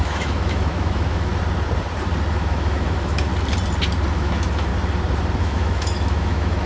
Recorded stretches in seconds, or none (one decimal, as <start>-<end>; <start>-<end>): 1.3-2.3; 3.3-4.1; 4.7-5.4